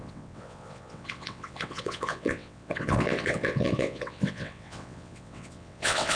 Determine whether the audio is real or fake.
fake